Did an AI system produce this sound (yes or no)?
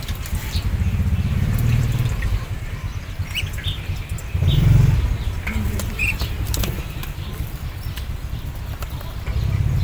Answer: yes